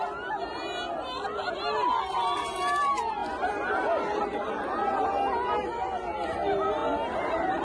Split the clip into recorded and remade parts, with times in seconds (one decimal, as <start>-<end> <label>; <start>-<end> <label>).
0.0-7.6 recorded